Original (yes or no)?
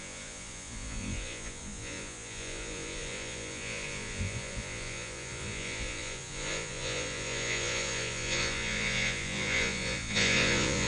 no